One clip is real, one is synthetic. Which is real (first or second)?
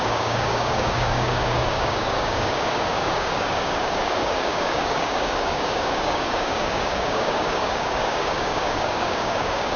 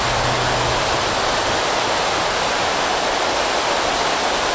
second